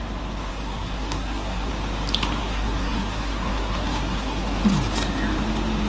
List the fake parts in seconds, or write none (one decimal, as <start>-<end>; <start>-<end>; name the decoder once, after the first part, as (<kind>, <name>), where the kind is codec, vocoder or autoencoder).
0.5-1.7 (codec, SNAC); 2.4-4.6